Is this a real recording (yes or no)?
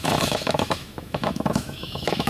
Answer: no